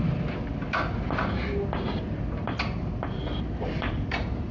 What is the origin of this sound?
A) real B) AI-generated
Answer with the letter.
B